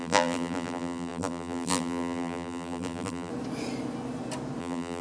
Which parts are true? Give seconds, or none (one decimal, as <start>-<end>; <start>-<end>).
3.3-4.6